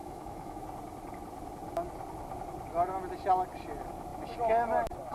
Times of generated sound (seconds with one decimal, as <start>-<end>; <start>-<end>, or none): 0.0-0.6